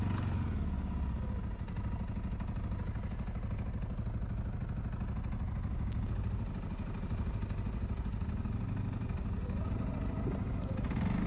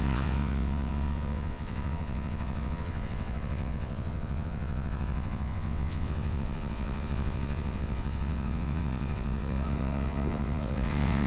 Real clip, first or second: first